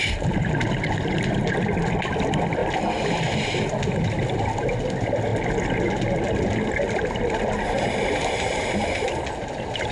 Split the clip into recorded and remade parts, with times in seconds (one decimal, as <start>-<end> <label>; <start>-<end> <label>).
0.0-9.9 recorded